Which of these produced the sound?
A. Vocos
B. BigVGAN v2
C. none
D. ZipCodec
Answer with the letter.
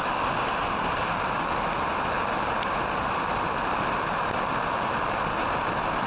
C